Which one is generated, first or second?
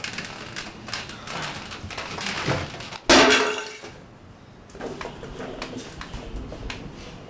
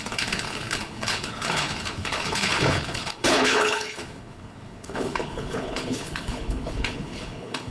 second